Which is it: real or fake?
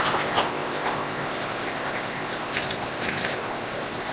fake